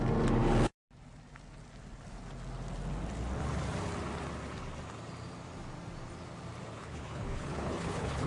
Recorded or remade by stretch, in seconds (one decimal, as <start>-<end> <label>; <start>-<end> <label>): 0.0-6.8 recorded; 6.8-8.3 remade